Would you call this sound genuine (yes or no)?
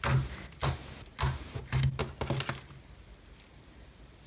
yes